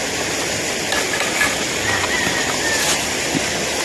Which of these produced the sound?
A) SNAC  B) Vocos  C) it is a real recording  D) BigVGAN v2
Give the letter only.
C